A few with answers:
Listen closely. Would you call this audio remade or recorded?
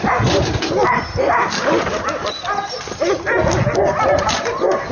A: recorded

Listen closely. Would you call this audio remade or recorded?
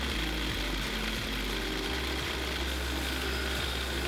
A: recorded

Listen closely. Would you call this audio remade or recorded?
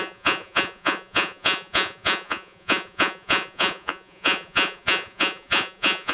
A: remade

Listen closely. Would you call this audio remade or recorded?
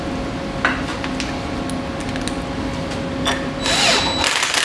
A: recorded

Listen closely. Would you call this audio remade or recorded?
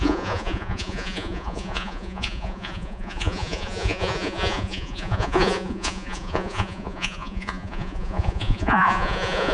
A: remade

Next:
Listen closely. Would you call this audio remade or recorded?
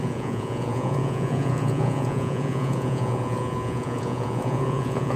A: remade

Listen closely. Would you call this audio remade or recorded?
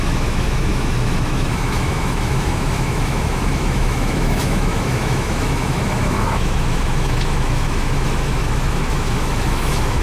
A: remade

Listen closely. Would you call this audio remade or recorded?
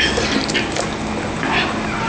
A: recorded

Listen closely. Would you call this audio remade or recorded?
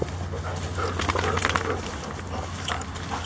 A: recorded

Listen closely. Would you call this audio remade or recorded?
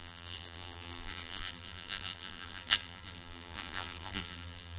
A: remade